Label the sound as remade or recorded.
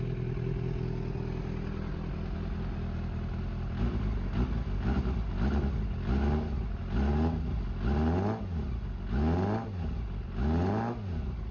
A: recorded